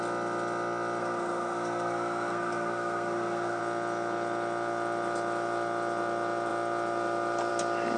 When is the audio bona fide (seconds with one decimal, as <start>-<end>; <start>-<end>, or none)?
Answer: 0.0-1.0; 3.6-8.0